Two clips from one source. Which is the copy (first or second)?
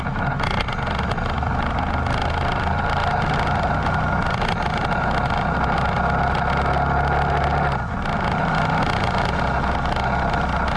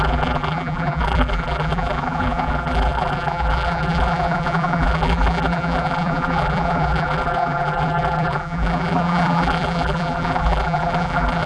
second